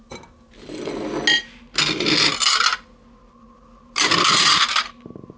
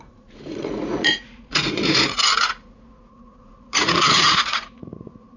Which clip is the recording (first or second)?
first